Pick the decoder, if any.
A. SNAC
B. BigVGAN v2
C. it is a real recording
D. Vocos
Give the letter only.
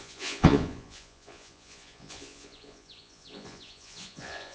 D